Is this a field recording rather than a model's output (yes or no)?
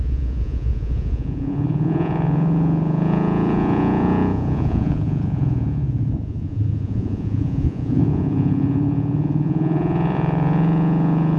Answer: no